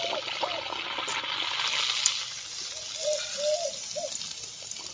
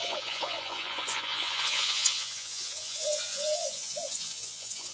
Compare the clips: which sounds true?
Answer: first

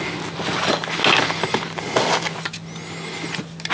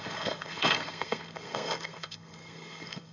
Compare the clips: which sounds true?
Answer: first